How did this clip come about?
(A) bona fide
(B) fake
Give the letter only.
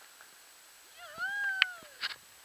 A